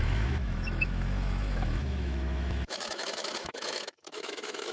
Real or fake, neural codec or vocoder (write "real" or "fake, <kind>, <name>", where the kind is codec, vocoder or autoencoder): fake, autoencoder, DAC-VAE